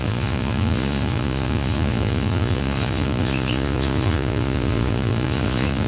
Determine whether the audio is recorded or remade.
remade